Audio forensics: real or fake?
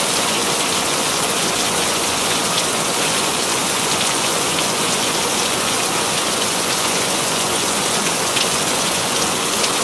fake